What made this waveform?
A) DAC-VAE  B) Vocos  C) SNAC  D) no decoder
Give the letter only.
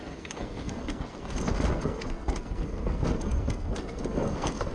C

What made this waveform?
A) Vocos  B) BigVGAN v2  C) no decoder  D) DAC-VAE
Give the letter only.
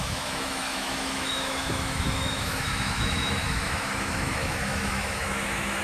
D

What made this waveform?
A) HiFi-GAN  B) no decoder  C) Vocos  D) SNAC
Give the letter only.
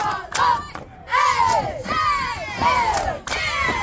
B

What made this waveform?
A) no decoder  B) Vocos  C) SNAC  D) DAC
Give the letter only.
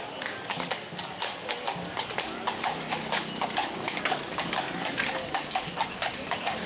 D